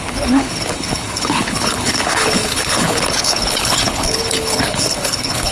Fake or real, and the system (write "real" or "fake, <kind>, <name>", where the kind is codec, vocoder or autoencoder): fake, codec, HILCodec